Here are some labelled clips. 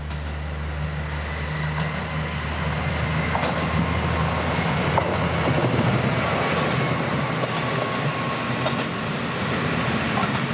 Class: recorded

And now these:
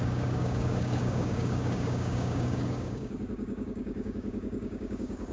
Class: remade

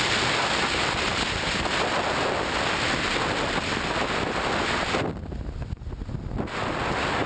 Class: recorded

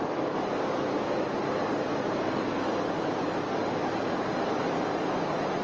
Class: recorded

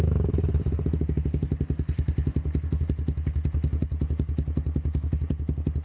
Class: recorded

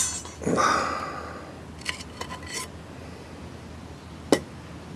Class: recorded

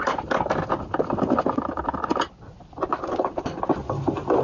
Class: recorded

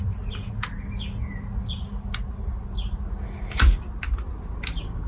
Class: recorded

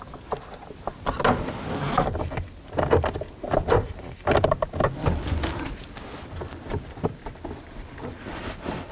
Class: recorded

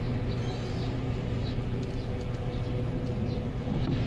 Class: recorded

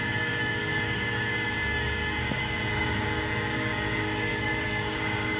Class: remade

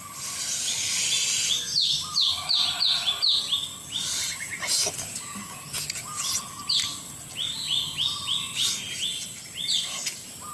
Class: recorded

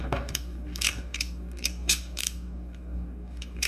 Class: remade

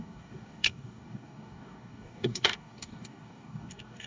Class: remade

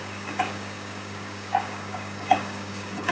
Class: remade